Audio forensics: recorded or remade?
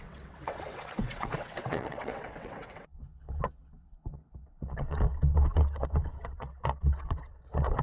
remade